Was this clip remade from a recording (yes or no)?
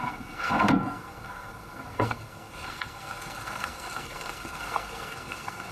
yes